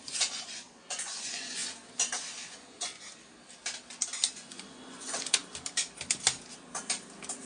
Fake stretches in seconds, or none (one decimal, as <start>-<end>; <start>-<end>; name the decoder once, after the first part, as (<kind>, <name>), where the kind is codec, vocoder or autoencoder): 0.0-1.6 (vocoder, Vocos); 2.5-2.9; 4.3-5.4

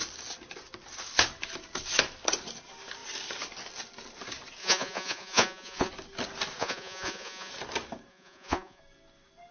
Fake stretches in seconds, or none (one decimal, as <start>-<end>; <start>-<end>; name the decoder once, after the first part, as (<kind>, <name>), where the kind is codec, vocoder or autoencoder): 4.6-5.9 (vocoder, Vocos); 6.6-7.5; 8.1-8.8

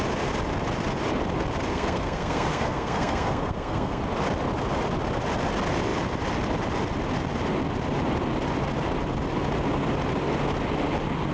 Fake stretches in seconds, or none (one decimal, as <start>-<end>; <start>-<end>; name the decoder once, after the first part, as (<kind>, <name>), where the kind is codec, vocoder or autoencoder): 1.7-4.0 (codec, SNAC)